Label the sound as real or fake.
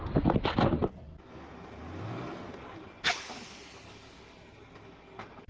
real